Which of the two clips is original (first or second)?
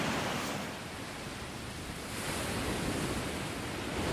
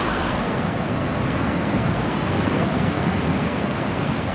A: first